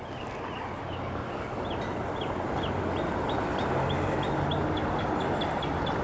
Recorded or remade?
recorded